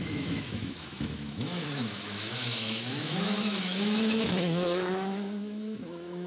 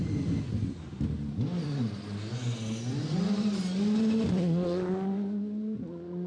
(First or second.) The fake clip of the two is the first